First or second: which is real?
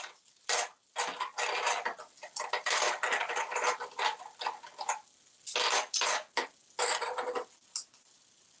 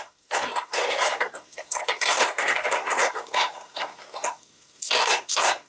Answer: first